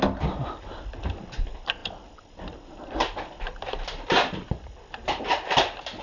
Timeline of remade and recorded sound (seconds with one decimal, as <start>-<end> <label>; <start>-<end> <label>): 0.0-1.8 recorded; 1.8-5.2 remade; 5.2-6.0 recorded

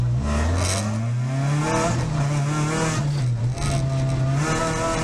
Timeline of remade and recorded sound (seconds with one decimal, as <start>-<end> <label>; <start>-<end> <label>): 0.0-5.0 recorded

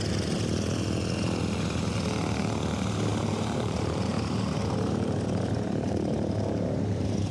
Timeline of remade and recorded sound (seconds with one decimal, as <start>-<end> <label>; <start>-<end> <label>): 0.0-3.1 recorded; 3.1-7.3 remade

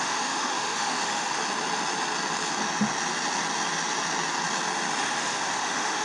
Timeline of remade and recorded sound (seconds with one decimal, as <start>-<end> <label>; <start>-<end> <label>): 0.0-1.4 remade; 1.4-5.0 recorded; 5.0-6.0 remade

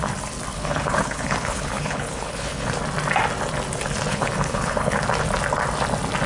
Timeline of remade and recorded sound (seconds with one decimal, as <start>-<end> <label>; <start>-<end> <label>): 0.0-0.5 recorded; 0.5-2.7 remade; 2.7-4.1 recorded; 4.1-5.0 remade; 5.0-6.3 recorded

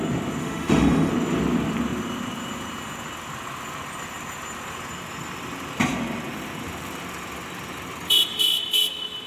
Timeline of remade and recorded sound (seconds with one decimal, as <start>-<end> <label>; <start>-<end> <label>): 0.0-0.4 recorded; 0.4-1.1 remade; 1.1-9.3 recorded

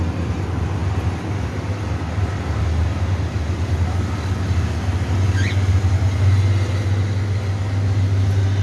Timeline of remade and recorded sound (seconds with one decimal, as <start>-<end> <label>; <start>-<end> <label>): 0.0-8.6 recorded